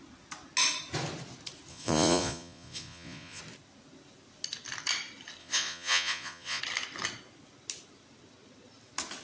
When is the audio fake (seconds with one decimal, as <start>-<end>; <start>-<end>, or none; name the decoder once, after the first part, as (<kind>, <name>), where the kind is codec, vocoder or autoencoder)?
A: 1.7-3.4 (vocoder, Vocos); 5.4-6.6